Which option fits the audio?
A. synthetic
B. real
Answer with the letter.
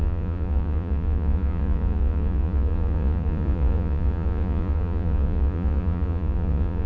A